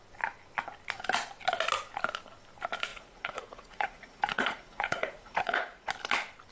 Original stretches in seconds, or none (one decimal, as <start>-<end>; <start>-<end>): 0.0-2.9; 5.9-6.5